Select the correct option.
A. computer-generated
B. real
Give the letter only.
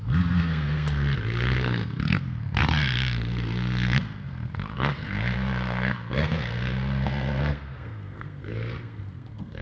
A